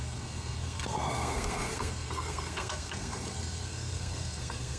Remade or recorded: remade